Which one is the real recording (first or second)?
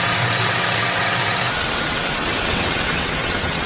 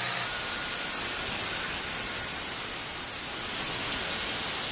second